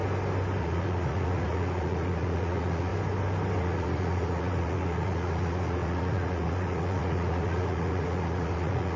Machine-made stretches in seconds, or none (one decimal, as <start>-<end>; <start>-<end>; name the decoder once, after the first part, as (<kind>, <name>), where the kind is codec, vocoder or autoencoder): 0.6-2.9 (vocoder, Vocos); 3.6-9.0